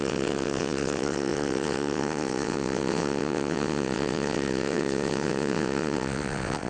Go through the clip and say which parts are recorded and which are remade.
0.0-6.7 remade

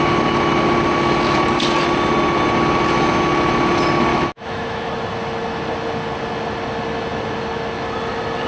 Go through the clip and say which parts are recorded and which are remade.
0.0-4.1 recorded; 4.1-4.9 remade; 4.9-8.5 recorded

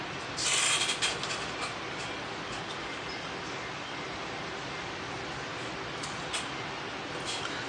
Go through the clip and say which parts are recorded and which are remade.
0.0-7.7 recorded